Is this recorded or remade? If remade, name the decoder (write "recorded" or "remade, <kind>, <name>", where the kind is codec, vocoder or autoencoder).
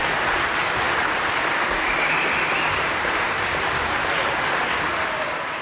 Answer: recorded